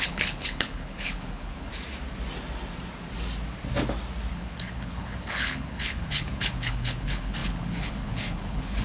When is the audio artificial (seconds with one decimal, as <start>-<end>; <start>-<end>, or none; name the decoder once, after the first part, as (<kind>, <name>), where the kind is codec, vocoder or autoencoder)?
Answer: 0.0-1.7 (codec, HILCodec); 4.3-8.8